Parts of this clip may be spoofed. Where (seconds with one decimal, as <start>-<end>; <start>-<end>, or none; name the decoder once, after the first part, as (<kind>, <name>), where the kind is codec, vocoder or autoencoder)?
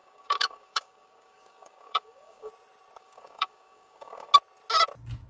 0.0-2.5 (codec, DAC); 3.0-4.3